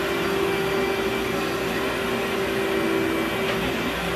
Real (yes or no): yes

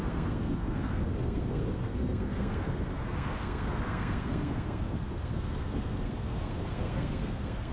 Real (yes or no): no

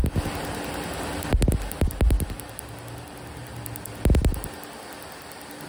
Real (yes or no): yes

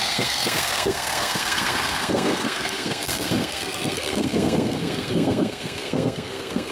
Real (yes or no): no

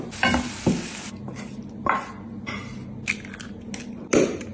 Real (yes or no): yes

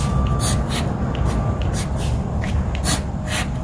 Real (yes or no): yes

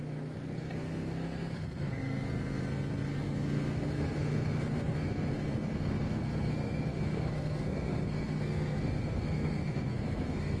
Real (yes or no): no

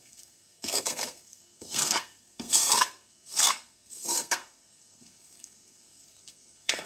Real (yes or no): no